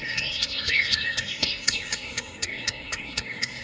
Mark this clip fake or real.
fake